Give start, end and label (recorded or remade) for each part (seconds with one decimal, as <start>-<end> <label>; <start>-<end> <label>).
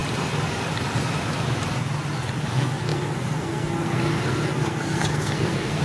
0.0-2.5 recorded; 2.5-5.8 remade